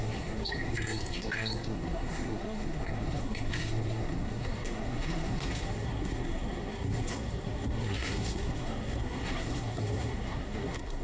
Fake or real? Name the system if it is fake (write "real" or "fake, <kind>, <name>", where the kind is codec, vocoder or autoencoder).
fake, codec, SNAC